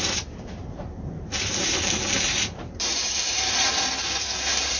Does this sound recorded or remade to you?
remade